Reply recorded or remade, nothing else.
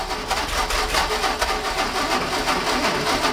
recorded